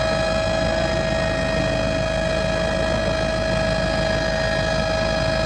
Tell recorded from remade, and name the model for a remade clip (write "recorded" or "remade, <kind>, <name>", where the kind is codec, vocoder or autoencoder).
recorded